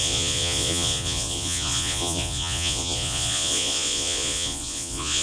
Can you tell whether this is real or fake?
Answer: fake